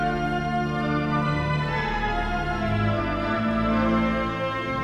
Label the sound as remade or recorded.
recorded